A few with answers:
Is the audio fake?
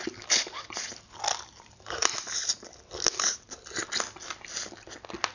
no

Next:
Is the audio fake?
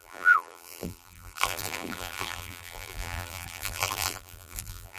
yes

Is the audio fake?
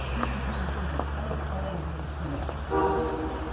no